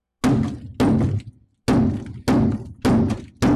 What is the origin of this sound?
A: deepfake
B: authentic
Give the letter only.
B